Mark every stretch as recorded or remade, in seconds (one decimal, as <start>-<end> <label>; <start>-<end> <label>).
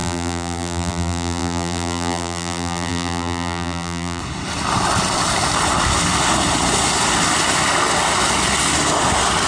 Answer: 0.0-4.2 remade; 4.2-9.5 recorded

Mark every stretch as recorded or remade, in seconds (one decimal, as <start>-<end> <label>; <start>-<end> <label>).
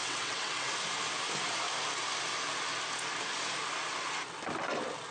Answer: 0.0-0.7 remade; 0.7-5.1 recorded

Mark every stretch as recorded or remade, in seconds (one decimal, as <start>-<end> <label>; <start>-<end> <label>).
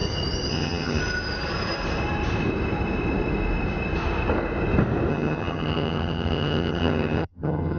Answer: 0.0-0.5 recorded; 0.5-1.0 remade; 1.0-5.1 recorded; 5.1-7.8 remade